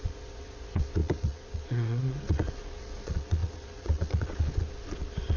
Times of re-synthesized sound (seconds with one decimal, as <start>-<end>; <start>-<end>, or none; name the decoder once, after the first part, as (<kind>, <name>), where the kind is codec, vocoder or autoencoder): 0.0-5.4 (vocoder, Vocos)